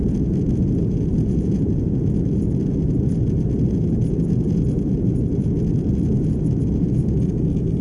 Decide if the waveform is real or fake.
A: real